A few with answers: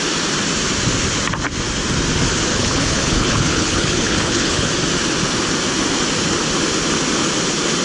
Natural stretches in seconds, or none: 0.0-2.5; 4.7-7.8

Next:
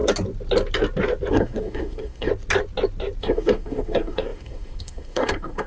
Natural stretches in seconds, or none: 0.0-1.3; 2.3-3.2

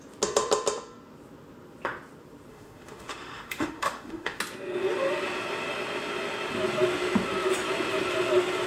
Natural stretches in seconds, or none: 0.0-2.5; 4.4-8.7

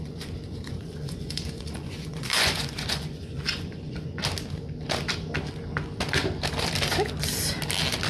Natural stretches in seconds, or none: 4.2-8.1

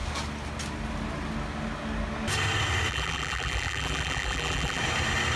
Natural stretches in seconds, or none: 0.0-2.9; 4.8-5.4

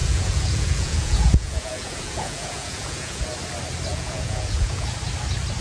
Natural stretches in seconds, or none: 3.2-3.9; 4.9-5.6